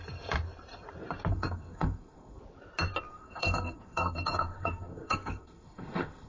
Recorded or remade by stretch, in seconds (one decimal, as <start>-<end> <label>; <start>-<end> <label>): 0.0-1.3 recorded; 1.3-2.4 remade; 2.4-3.1 recorded; 3.1-6.3 remade